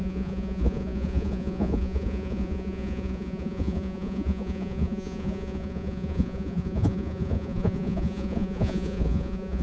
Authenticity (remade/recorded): remade